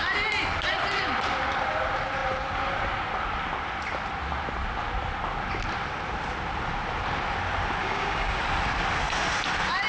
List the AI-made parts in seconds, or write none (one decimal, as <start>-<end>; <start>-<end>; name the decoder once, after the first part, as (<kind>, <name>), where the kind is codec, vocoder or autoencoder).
7.8-8.4 (codec, DAC)